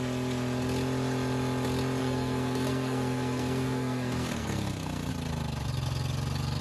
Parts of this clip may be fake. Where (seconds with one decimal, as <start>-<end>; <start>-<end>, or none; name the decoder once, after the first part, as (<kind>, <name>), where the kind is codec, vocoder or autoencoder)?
2.0-5.1 (codec, SNAC)